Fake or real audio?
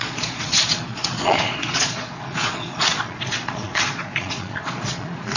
fake